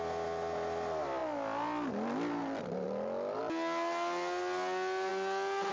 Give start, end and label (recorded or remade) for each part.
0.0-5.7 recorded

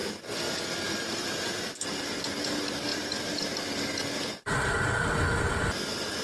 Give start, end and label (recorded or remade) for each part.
0.0-6.2 recorded

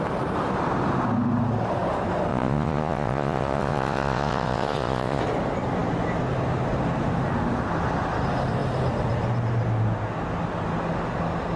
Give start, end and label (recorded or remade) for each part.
0.0-2.3 recorded; 2.3-5.2 remade; 5.2-11.6 recorded

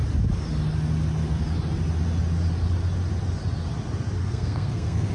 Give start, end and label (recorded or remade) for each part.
0.0-4.2 recorded; 4.2-5.1 remade

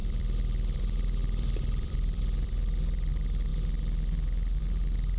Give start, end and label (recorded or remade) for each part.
0.0-3.1 remade; 3.1-5.2 recorded

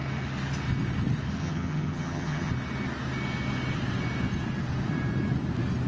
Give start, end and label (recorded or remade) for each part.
0.0-1.4 recorded; 1.4-2.5 remade; 2.5-5.9 recorded

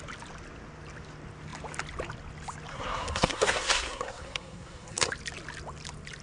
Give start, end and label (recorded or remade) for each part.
0.0-2.7 recorded; 2.7-5.1 remade; 5.1-6.2 recorded

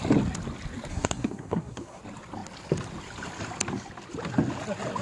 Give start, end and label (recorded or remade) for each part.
0.0-0.9 recorded; 0.9-2.0 remade; 2.0-5.0 recorded